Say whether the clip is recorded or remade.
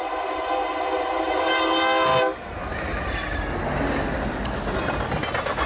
recorded